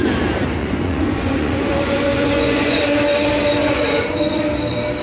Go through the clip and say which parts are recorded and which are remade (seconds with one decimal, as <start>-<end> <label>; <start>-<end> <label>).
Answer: 0.0-0.6 recorded; 0.6-2.8 remade; 2.8-3.6 recorded; 3.6-4.4 remade; 4.4-5.0 recorded